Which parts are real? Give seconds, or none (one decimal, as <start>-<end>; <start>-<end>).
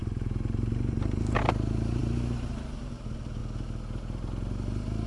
3.4-5.1